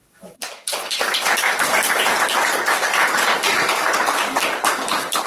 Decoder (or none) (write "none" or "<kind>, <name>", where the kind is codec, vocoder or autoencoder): codec, DAC